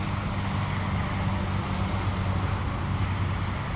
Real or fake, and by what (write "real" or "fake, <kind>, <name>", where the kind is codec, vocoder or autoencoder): real